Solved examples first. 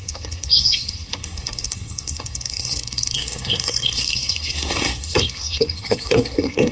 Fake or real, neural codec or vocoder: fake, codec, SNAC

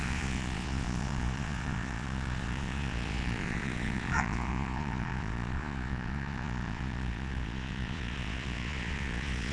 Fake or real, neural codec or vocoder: fake, vocoder, Vocos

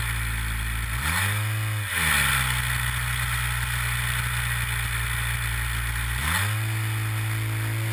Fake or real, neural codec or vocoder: real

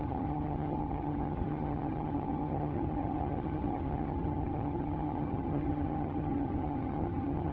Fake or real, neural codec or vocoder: fake, vocoder, HiFi-GAN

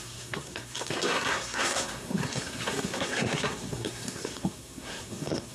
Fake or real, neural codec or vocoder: fake, codec, SNAC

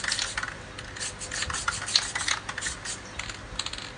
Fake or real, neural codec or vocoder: real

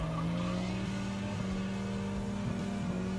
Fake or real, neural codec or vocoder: real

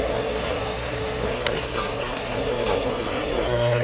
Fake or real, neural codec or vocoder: fake, codec, SNAC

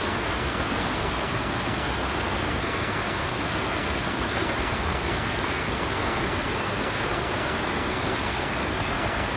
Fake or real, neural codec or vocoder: fake, codec, SNAC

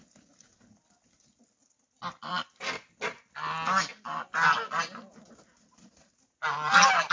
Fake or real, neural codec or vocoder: real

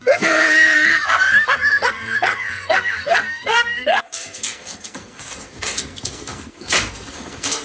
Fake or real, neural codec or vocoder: fake, codec, SNAC